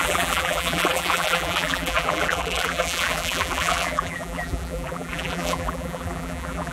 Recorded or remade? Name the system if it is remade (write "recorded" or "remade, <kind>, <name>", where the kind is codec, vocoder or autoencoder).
remade, vocoder, BigVGAN v2